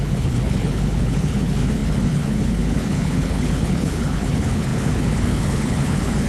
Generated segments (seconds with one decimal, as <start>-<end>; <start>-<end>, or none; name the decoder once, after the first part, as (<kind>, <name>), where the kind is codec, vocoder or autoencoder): 0.0-6.3 (codec, HILCodec)